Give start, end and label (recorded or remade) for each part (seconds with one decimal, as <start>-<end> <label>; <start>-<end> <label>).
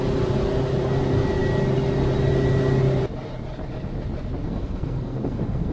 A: 0.0-4.4 recorded; 4.4-5.7 remade